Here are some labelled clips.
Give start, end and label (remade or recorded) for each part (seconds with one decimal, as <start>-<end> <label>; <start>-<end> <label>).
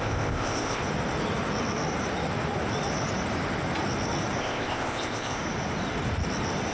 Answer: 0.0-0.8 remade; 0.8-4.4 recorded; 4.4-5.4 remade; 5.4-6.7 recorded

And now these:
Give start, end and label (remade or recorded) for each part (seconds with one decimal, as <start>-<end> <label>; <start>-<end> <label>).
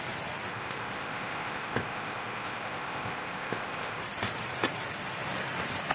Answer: 0.0-0.5 recorded; 0.5-4.0 remade; 4.0-5.9 recorded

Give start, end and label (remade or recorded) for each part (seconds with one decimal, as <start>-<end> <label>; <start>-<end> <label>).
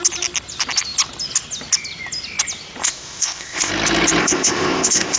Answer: 0.0-2.8 recorded; 2.8-3.7 remade; 3.7-4.2 recorded; 4.2-5.2 remade